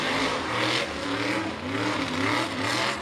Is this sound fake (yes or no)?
no